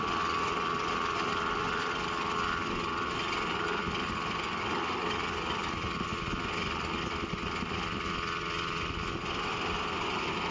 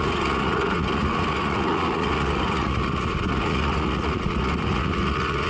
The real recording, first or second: first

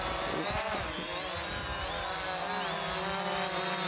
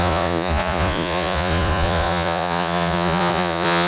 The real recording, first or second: first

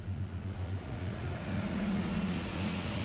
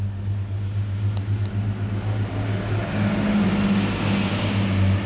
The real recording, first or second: second